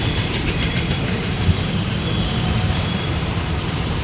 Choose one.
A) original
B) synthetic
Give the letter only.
B